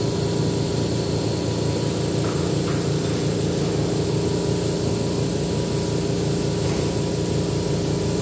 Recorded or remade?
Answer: recorded